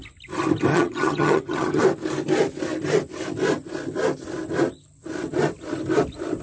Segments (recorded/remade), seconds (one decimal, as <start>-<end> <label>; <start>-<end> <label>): 0.0-0.7 recorded; 0.7-1.8 remade; 1.8-6.4 recorded